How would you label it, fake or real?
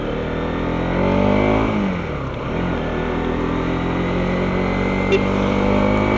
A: real